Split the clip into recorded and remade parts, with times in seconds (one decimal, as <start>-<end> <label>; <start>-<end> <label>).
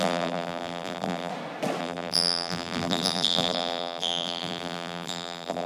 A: 0.0-1.3 remade; 1.3-1.8 recorded; 1.8-5.7 remade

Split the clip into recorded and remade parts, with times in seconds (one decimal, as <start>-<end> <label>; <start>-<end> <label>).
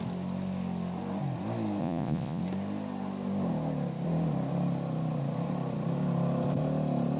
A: 0.0-1.8 recorded; 1.8-2.4 remade; 2.4-7.2 recorded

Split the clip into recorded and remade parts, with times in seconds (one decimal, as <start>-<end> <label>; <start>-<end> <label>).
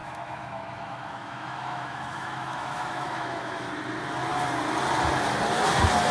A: 0.0-3.7 remade; 3.7-6.1 recorded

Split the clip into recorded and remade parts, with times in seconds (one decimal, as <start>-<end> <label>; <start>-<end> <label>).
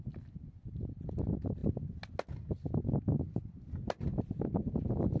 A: 0.0-5.2 recorded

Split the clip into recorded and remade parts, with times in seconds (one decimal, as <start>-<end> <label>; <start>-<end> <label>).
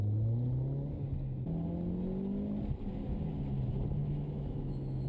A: 0.0-4.0 recorded; 4.0-5.1 remade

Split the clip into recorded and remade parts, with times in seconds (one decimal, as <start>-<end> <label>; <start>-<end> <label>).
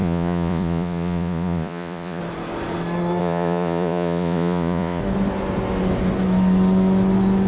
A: 0.0-2.2 remade; 2.2-3.2 recorded; 3.2-5.0 remade; 5.0-7.5 recorded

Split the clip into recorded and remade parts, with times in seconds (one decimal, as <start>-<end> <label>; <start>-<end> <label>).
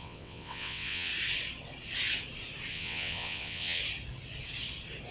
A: 0.0-1.1 remade; 1.1-2.7 recorded; 2.7-3.8 remade; 3.8-5.1 recorded